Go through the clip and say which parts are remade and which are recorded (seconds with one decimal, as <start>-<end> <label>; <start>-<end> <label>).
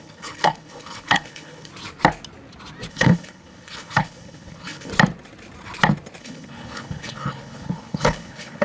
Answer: 0.0-1.7 remade; 1.7-2.9 recorded; 2.9-4.9 remade; 4.9-6.2 recorded; 6.2-8.6 remade